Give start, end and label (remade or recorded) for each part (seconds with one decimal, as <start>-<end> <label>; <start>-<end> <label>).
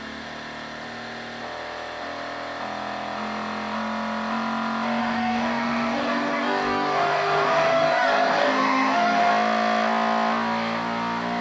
0.0-5.0 recorded; 5.0-9.3 remade; 9.3-11.4 recorded